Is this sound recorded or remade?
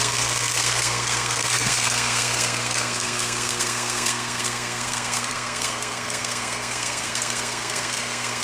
remade